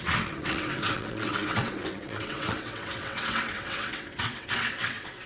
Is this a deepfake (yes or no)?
yes